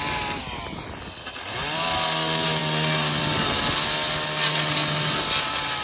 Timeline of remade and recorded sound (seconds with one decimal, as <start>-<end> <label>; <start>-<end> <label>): 0.0-5.8 recorded